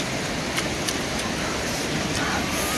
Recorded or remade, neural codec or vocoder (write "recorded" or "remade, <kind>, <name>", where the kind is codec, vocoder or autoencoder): recorded